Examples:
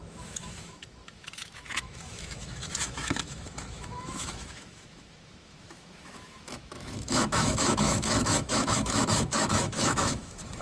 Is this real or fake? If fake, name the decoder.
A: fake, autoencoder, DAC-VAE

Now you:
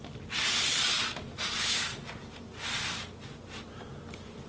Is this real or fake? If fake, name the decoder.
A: real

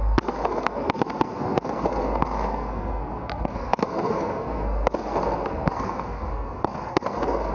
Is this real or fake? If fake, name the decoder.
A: fake, codec, SNAC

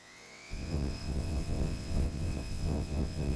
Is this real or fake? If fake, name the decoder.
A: fake, vocoder, WaveNeXt